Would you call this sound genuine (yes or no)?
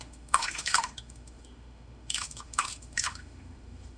no